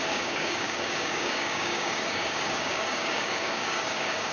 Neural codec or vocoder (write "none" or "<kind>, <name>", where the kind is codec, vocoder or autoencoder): codec, DAC